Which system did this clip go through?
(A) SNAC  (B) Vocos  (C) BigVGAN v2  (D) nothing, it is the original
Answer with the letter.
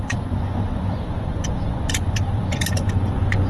B